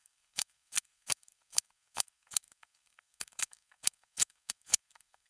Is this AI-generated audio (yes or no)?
yes